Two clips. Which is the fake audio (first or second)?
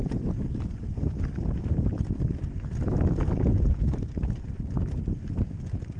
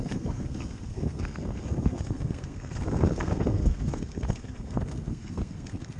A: second